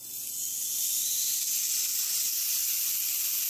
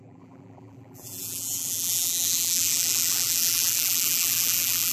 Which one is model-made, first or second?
second